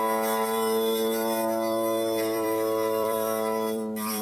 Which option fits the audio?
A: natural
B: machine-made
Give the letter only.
B